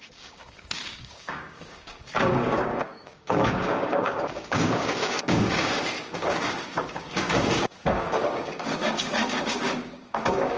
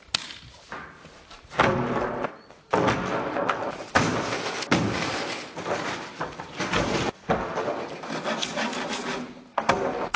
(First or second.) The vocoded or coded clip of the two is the first